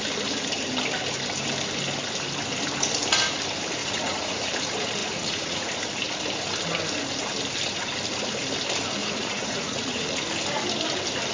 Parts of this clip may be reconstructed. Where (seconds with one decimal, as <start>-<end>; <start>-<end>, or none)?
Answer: 3.8-4.5; 5.0-5.7; 9.0-10.2

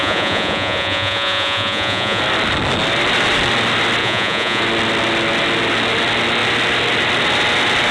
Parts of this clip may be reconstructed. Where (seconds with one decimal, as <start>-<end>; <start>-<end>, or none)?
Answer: 0.0-2.2; 4.0-4.6

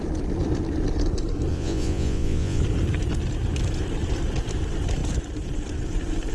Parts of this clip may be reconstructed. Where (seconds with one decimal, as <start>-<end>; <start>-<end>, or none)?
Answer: 1.5-2.6

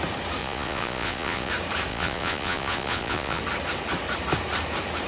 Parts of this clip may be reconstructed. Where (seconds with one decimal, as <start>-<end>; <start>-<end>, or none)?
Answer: 0.4-1.5; 1.9-3.4

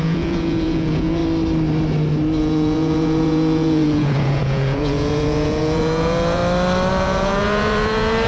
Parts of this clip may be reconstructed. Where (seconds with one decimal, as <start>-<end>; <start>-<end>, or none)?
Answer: 0.0-1.2; 2.4-6.4; 6.9-8.3

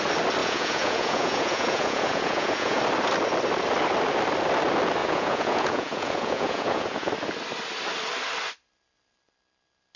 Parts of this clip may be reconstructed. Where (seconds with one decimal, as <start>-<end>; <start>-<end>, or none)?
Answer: 0.4-2.8; 5.0-7.1

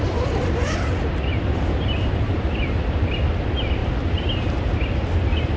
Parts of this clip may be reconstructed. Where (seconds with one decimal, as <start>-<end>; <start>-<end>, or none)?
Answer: none